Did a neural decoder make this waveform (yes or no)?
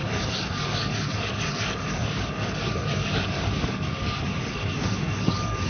yes